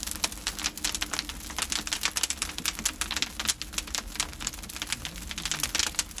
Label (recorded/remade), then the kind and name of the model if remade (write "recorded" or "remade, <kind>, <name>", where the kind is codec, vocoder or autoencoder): recorded